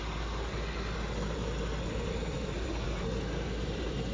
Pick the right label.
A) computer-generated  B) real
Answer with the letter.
B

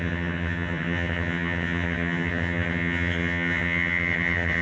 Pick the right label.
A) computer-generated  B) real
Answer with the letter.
A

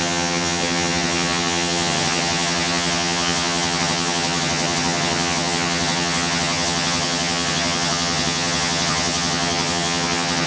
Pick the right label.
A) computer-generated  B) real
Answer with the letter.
A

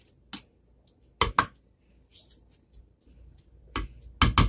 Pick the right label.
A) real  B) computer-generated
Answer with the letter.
A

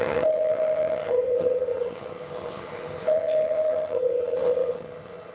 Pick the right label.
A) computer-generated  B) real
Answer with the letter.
A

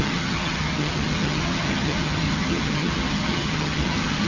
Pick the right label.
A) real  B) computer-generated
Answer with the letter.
B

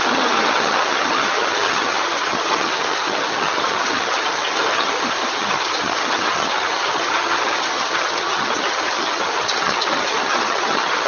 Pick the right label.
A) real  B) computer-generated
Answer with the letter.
B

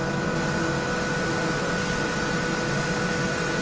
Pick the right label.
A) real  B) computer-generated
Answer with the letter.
A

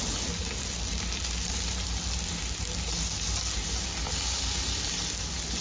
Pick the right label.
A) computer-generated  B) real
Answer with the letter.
B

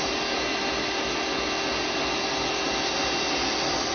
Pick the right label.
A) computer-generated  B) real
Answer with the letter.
B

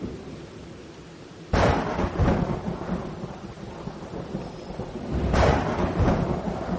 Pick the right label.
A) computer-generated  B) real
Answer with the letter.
B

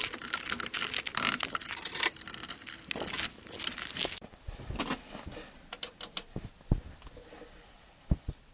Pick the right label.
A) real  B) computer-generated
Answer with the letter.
A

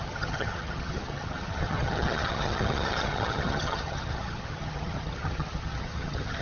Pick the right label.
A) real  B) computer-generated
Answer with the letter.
B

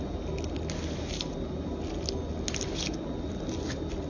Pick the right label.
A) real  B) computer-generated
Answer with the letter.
A